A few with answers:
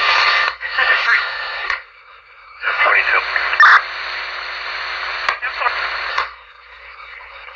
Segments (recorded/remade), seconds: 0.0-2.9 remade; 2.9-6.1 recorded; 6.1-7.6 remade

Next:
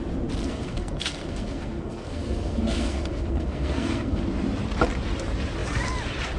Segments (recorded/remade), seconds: 0.0-0.4 recorded; 0.4-4.2 remade; 4.2-6.4 recorded